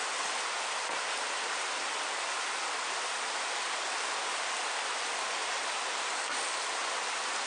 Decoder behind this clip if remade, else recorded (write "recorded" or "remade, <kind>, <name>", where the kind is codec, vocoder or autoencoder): recorded